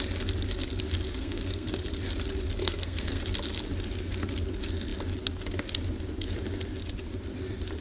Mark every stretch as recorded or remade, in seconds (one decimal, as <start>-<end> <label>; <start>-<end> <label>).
0.0-1.2 recorded; 1.2-1.7 remade; 1.7-2.6 recorded; 2.6-3.2 remade; 3.2-7.8 recorded